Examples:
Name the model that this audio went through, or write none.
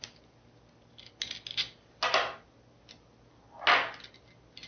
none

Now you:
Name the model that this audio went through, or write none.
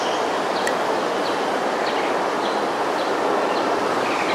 none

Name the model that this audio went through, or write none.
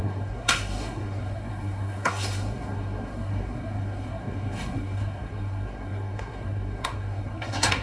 codec, SNAC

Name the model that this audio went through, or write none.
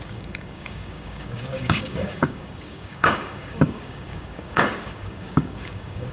codec, DAC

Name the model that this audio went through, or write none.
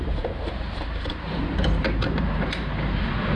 vocoder, BigVGAN v2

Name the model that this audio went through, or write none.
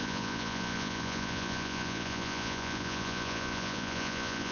vocoder, Vocos